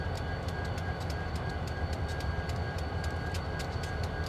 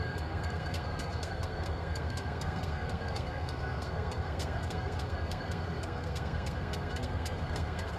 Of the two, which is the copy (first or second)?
second